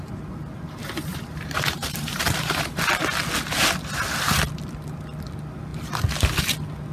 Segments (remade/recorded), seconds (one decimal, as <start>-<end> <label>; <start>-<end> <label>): 0.0-1.1 recorded; 1.1-2.9 remade; 2.9-6.9 recorded